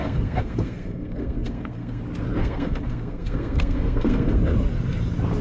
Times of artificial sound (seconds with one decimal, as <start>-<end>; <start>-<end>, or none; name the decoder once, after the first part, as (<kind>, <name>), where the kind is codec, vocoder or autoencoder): 0.0-2.0 (codec, SNAC); 2.4-4.4